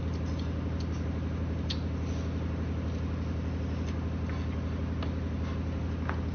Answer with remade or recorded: recorded